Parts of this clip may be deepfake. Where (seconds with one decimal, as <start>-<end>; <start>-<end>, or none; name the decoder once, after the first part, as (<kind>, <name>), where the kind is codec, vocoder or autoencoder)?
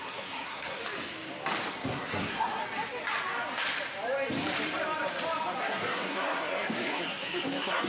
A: 0.0-0.8 (codec, SNAC); 1.7-2.6; 5.6-7.9